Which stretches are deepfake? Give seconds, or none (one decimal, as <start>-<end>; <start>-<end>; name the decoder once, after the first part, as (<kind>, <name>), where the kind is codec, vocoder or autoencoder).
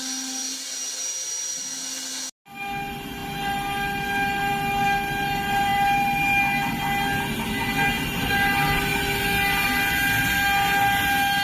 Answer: none